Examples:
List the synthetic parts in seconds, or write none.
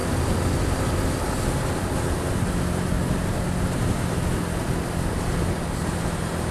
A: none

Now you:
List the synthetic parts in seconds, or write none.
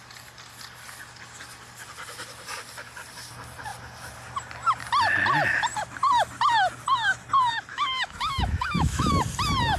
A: 7.7-9.1 (autoencoder, DAC-VAE)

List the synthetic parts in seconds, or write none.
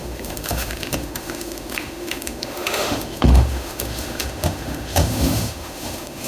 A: 0.0-6.3 (autoencoder, DAC-VAE)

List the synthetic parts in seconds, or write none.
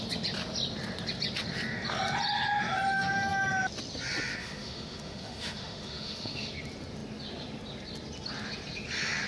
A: 4.4-6.5 (autoencoder, DAC-VAE)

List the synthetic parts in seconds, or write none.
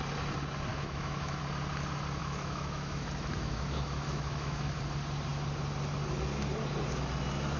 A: 0.7-1.4 (autoencoder, DAC-VAE); 2.2-4.8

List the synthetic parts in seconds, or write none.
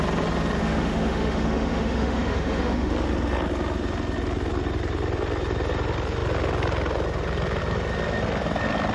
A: 0.6-2.9 (autoencoder, DAC-VAE)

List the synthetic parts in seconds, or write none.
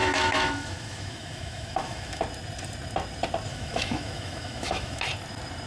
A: 0.0-2.2 (autoencoder, DAC-VAE); 3.5-5.0